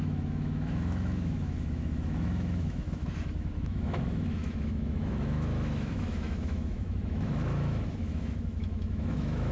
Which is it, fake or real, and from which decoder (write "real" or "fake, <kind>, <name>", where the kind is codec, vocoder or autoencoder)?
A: fake, autoencoder, DAC-VAE